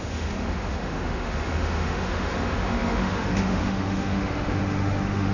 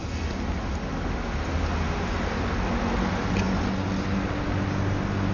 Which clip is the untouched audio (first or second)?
second